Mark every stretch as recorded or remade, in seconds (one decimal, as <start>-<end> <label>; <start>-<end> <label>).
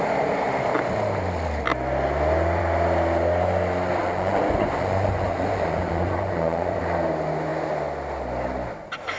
0.0-4.0 recorded; 4.0-6.8 remade; 6.8-9.2 recorded